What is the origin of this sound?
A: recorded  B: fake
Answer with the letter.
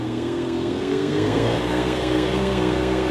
B